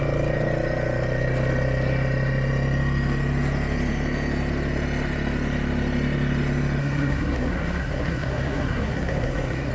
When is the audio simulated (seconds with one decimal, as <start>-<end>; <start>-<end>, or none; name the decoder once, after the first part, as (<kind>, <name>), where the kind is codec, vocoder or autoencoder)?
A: 6.8-9.7 (codec, SNAC)

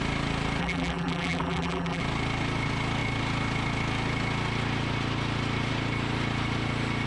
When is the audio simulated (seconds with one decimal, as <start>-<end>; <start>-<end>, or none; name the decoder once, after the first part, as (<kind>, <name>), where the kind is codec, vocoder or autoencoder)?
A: 0.6-2.0 (vocoder, BigVGAN v2)